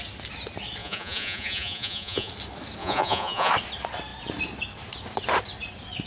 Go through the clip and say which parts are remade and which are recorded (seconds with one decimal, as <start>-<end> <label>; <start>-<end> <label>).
0.0-0.8 recorded; 0.8-2.3 remade; 2.3-2.8 recorded; 2.8-3.5 remade; 3.5-6.1 recorded